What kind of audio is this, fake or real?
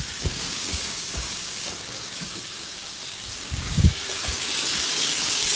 fake